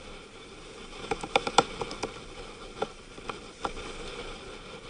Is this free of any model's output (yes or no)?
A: yes